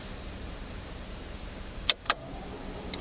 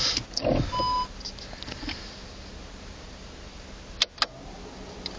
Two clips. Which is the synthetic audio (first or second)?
first